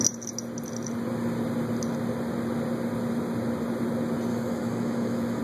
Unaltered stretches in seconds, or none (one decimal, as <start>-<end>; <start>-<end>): 0.0-4.3